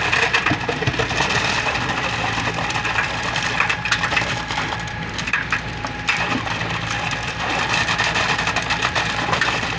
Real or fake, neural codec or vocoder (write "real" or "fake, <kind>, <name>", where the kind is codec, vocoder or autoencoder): fake, vocoder, BigVGAN v2